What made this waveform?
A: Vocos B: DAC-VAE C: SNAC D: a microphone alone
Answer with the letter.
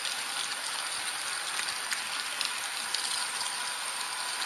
D